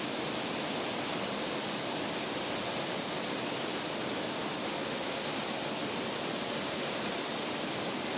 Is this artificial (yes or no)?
no